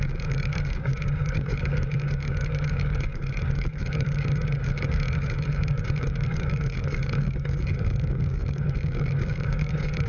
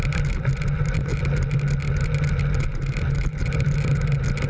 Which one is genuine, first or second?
second